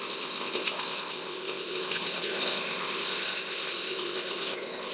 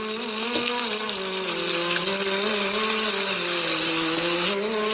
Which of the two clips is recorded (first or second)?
second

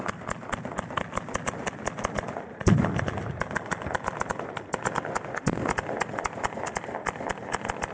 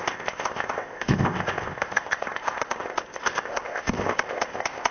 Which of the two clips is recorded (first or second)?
first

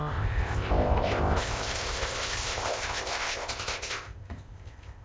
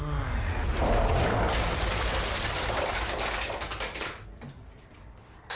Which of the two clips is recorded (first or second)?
second